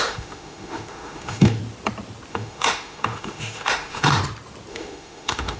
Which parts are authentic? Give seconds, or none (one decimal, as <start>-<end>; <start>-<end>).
1.6-2.3; 4.2-4.7